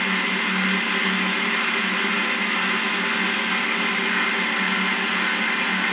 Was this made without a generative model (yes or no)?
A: yes